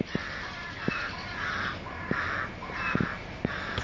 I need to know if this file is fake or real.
real